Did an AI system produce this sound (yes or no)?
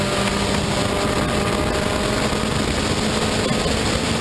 no